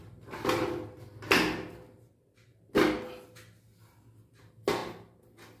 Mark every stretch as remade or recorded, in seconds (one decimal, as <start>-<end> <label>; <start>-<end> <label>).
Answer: 0.0-5.6 recorded